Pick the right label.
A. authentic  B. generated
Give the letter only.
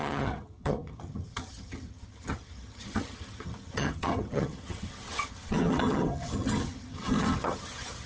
B